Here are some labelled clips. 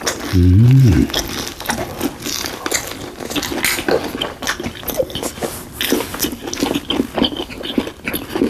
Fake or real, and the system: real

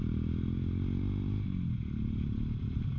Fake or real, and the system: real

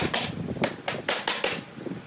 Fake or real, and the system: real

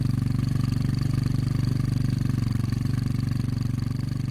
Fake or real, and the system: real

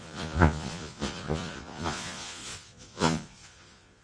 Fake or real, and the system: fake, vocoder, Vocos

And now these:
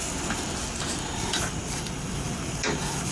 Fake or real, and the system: real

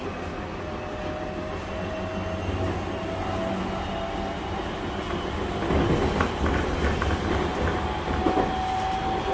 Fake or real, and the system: real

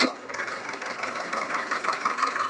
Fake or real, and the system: fake, codec, SNAC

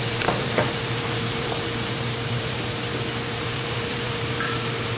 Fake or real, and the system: fake, vocoder, BigVGAN v2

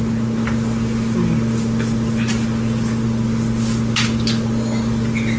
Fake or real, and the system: real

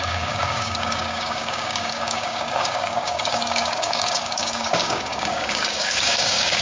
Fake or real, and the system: fake, codec, DAC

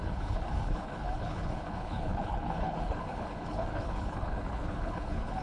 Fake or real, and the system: fake, codec, HILCodec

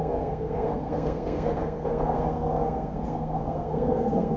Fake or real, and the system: fake, codec, SNAC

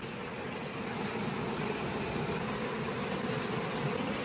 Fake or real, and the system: real